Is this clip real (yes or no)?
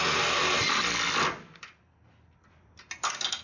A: yes